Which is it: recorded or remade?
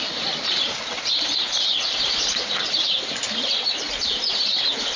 recorded